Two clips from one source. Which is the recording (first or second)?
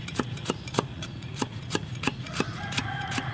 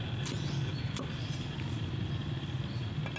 second